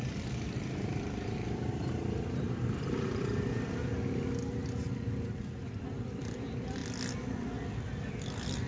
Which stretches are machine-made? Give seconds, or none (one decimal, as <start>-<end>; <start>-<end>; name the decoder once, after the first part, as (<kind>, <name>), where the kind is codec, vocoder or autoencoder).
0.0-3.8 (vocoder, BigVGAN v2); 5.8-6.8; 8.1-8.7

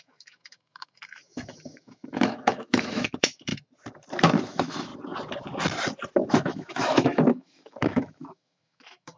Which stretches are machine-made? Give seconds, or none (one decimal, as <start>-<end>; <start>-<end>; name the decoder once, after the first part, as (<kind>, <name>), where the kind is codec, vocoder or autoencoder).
0.0-3.5 (autoencoder, DAC-VAE); 4.4-4.9; 6.3-9.2

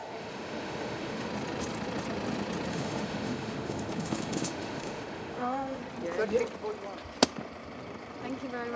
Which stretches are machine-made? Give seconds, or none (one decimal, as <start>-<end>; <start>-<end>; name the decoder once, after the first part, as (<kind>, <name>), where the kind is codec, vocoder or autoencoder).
0.0-1.3 (autoencoder, DAC-VAE); 2.7-5.8

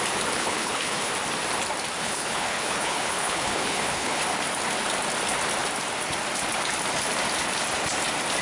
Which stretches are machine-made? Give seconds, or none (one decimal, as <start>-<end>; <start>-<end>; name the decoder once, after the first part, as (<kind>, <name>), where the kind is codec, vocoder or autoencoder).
0.4-1.1 (codec, HILCodec); 2.0-4.2

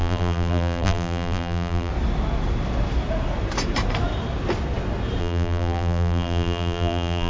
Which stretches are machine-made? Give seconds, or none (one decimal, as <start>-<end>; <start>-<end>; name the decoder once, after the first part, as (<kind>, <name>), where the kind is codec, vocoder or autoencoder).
0.0-1.9 (vocoder, BigVGAN v2); 5.2-7.3

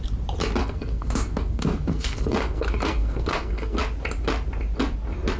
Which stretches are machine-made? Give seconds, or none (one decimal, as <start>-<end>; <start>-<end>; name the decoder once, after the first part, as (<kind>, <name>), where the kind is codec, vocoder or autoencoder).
0.6-3.8 (codec, SNAC)

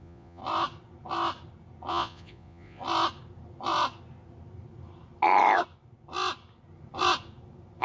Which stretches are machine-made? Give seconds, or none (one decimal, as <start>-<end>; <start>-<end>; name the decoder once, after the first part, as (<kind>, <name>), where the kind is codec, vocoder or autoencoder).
0.0-0.4 (vocoder, Vocos); 1.9-2.8

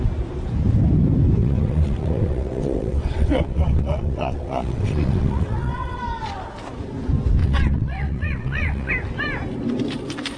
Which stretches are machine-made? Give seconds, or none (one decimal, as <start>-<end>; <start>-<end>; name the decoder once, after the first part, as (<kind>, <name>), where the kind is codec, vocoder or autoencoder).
1.4-6.0 (vocoder, WaveNeXt); 7.4-8.9